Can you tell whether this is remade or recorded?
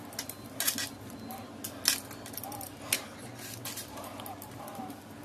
recorded